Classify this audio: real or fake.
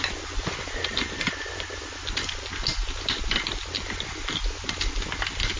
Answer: real